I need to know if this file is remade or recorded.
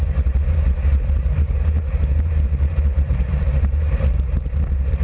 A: remade